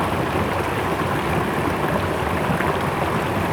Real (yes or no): yes